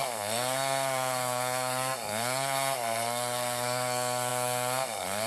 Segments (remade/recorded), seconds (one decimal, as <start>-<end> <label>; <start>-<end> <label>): 0.0-5.3 remade